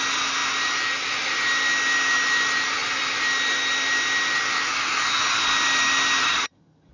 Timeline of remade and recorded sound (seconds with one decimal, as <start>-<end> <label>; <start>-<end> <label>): 0.0-6.2 recorded; 6.2-6.9 remade